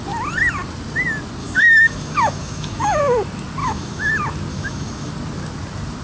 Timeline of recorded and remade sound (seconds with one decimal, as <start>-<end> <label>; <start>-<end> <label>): 0.0-1.4 recorded; 1.4-3.0 remade; 3.0-3.6 recorded; 3.6-4.1 remade; 4.1-4.5 recorded; 4.5-5.1 remade; 5.1-6.0 recorded